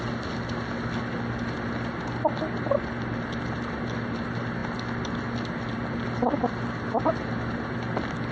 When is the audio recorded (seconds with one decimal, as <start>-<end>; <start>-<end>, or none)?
0.0-8.3